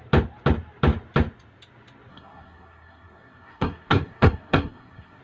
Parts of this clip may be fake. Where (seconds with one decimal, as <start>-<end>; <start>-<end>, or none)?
2.1-5.2